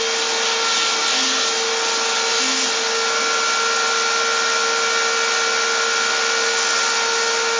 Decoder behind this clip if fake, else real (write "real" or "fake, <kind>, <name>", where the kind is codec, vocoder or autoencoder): real